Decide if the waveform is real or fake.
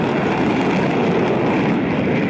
real